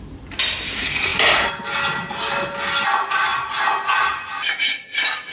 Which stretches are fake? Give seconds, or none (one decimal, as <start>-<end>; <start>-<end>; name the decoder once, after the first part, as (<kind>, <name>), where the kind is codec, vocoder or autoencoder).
none